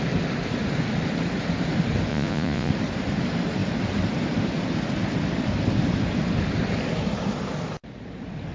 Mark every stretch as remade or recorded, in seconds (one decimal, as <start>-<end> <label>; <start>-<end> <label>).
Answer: 0.0-2.1 recorded; 2.1-2.7 remade; 2.7-8.5 recorded